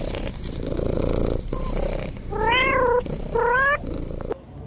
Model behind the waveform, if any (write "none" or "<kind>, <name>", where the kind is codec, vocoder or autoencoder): none